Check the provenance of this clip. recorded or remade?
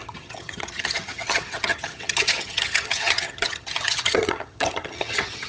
remade